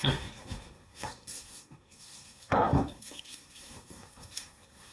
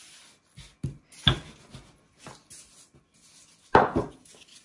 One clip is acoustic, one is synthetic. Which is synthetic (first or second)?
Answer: first